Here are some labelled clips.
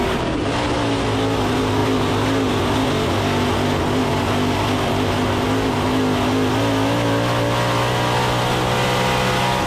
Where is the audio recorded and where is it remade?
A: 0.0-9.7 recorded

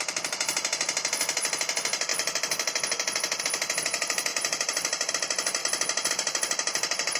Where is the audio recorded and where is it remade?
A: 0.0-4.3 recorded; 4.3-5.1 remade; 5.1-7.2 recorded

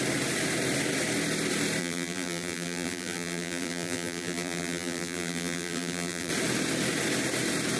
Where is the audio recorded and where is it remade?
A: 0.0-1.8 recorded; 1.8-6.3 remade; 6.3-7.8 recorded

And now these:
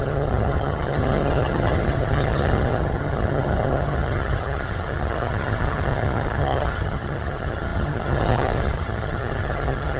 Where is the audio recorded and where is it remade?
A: 0.0-10.0 remade

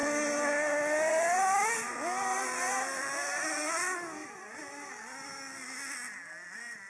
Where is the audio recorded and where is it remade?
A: 0.0-6.9 recorded

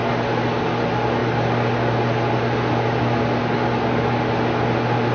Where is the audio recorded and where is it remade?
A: 0.0-5.1 recorded

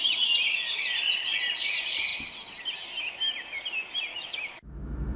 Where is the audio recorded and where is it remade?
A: 0.0-4.1 recorded; 4.1-5.2 remade